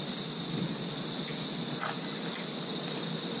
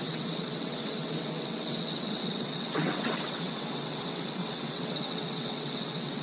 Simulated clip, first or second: second